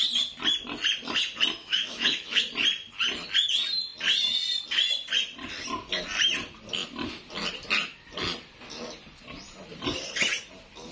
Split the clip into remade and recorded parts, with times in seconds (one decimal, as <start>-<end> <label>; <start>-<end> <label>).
0.0-1.6 recorded; 1.6-2.4 remade; 2.4-10.9 recorded